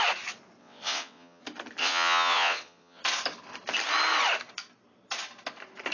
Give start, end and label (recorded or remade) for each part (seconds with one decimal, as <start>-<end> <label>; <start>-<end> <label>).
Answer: 0.0-0.6 recorded; 0.6-1.4 remade; 1.4-1.8 recorded; 1.8-3.0 remade; 3.0-5.9 recorded